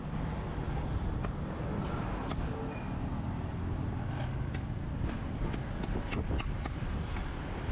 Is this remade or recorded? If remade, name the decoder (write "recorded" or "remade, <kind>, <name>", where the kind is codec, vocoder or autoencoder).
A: recorded